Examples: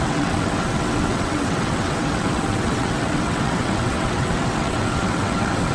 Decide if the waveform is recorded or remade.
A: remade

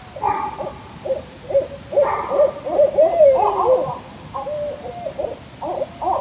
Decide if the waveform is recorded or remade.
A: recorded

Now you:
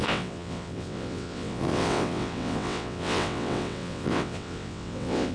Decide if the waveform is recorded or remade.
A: remade